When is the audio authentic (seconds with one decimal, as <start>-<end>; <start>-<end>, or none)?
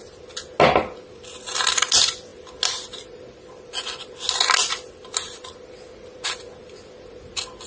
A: 0.0-7.7